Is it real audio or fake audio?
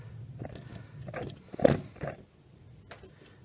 real